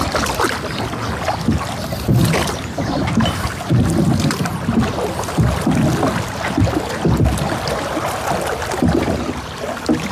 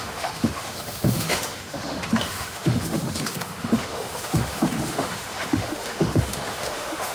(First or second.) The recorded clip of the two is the first